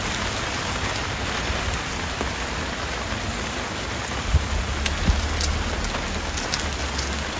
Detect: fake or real real